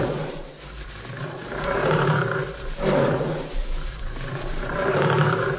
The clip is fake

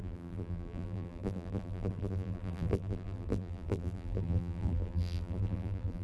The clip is fake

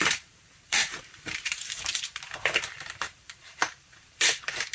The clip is fake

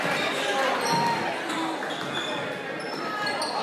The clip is real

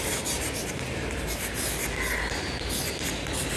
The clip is real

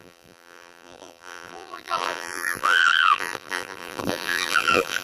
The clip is fake